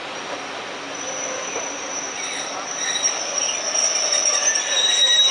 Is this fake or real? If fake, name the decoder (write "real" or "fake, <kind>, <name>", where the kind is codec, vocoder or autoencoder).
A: real